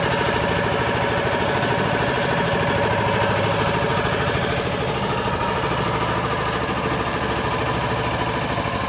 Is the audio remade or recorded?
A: recorded